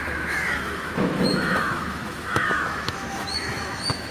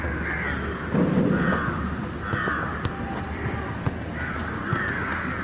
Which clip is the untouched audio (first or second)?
second